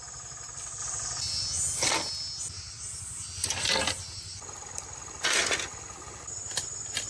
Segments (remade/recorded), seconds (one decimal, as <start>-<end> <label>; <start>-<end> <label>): 0.0-7.1 recorded